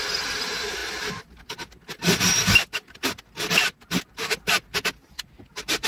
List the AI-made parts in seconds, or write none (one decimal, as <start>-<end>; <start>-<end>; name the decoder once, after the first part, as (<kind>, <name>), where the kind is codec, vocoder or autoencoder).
none